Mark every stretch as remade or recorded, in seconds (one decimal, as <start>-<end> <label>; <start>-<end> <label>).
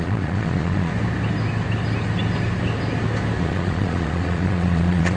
0.0-0.9 remade; 0.9-3.4 recorded; 3.4-5.2 remade